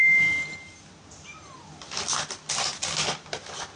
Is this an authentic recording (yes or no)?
yes